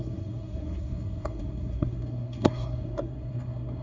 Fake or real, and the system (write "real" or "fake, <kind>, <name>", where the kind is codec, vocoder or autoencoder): fake, codec, SNAC